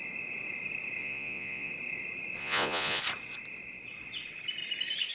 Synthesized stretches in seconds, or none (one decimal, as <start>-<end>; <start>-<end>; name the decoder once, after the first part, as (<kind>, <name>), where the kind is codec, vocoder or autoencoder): 1.0-1.7 (vocoder, Vocos); 2.4-3.0